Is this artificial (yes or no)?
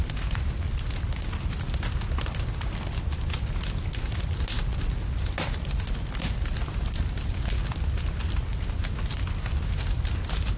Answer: no